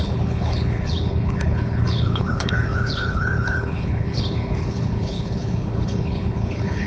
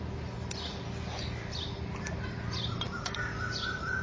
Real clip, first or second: second